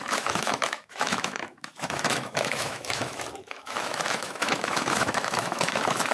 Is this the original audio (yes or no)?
no